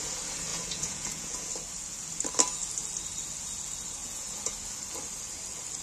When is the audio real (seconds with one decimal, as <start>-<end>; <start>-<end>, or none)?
0.0-0.5; 1.5-4.0; 4.5-5.8